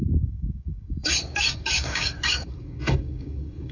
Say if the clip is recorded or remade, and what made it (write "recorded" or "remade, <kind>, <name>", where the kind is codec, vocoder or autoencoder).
remade, codec, DAC